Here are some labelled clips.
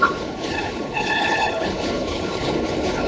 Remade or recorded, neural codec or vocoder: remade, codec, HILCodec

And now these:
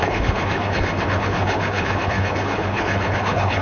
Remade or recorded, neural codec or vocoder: remade, codec, HILCodec